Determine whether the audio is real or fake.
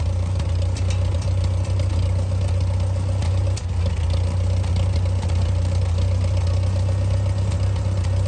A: real